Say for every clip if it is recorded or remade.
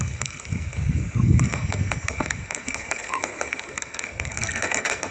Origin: remade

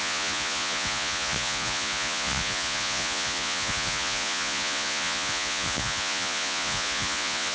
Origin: remade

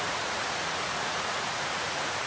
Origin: remade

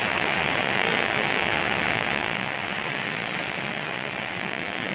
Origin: remade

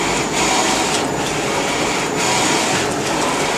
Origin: recorded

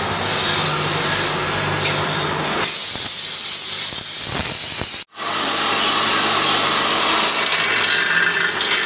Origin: recorded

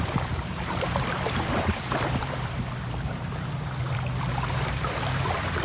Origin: remade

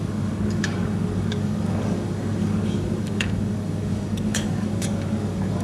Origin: remade